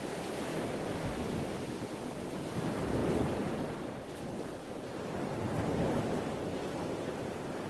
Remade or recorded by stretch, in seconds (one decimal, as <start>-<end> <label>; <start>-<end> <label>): 0.0-7.7 recorded